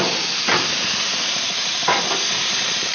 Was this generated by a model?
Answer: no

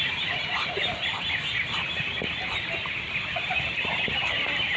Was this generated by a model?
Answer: yes